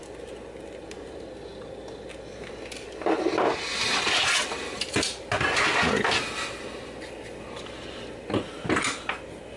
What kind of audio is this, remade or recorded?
recorded